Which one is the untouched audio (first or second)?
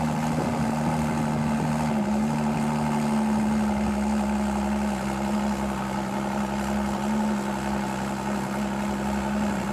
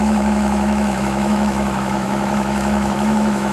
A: first